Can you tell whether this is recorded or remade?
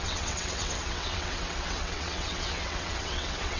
remade